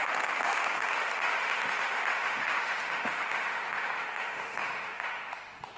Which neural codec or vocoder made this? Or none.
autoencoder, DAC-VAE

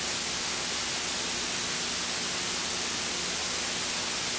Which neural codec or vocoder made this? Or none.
none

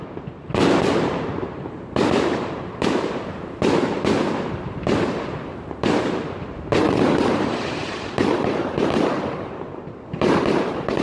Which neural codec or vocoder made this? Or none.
vocoder, BigVGAN v2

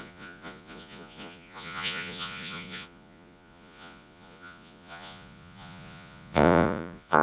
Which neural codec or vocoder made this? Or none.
vocoder, Vocos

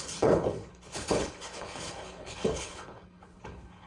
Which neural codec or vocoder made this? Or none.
codec, HILCodec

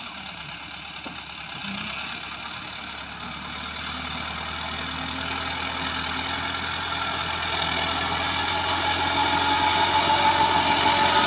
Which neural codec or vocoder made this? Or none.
none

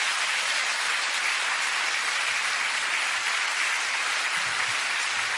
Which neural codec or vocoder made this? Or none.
none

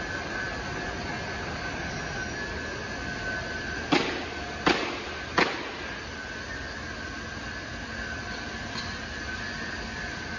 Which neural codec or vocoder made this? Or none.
none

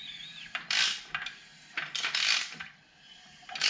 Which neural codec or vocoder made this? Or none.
none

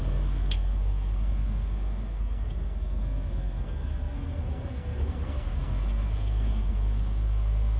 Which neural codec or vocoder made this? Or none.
codec, SNAC